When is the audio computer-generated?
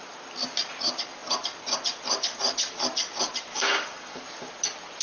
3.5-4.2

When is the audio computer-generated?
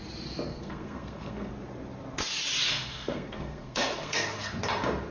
0.5-1.5; 2.7-4.6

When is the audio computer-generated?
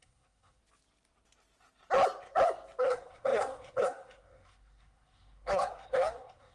0.0-0.6; 2.8-6.5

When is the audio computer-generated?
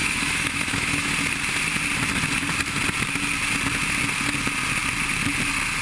0.0-1.1